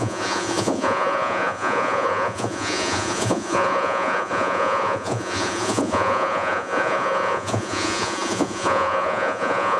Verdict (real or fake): fake